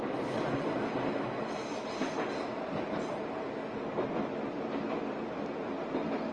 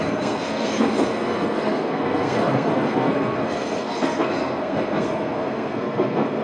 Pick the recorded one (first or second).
first